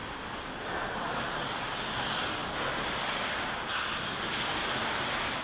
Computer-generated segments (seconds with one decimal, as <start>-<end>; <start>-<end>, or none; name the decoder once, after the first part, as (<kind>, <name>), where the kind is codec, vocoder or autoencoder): none